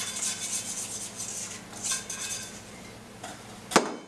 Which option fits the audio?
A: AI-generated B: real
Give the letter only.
B